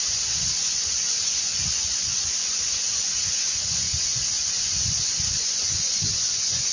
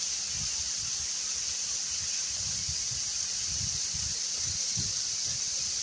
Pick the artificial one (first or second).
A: first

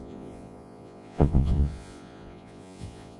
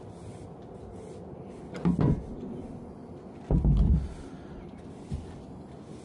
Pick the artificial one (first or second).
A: first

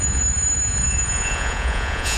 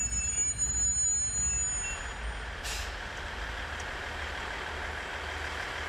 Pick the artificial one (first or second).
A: first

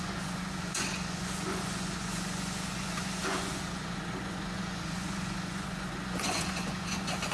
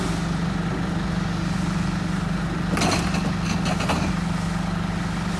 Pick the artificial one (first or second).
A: first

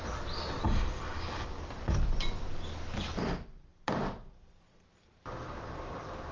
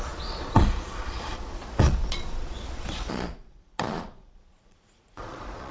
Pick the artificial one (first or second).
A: second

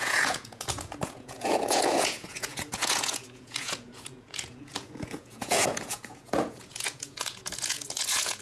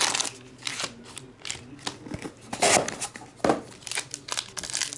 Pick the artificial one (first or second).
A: first